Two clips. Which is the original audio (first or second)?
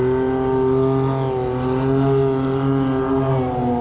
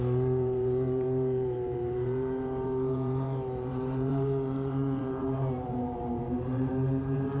first